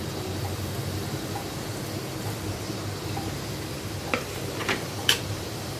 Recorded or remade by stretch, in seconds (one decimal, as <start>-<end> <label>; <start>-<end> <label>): 0.0-4.6 recorded; 4.6-5.8 remade